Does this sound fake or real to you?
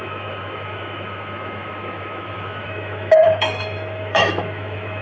fake